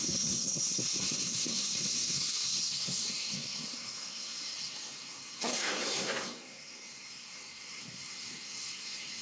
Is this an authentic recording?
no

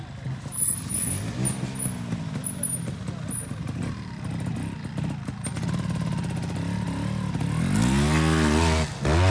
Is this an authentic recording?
yes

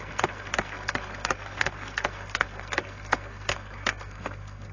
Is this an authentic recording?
no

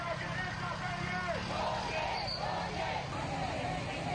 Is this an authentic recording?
yes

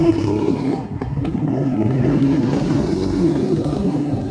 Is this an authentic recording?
no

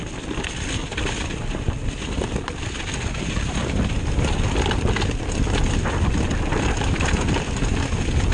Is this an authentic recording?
yes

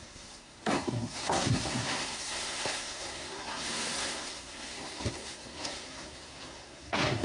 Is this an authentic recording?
no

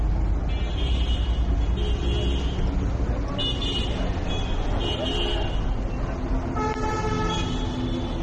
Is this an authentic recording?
yes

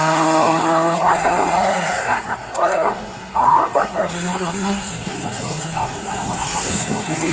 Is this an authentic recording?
no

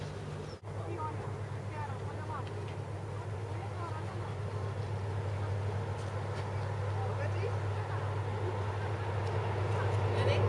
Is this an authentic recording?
yes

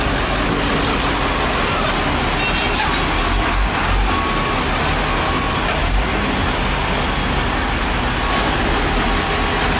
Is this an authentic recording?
yes